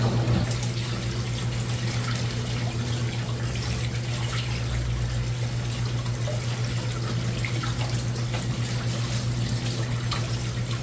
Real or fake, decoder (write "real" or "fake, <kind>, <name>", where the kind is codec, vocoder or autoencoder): real